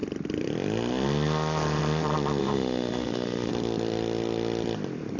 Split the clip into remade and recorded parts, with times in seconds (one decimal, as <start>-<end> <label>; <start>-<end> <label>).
0.0-2.4 recorded; 2.4-3.5 remade; 3.5-5.2 recorded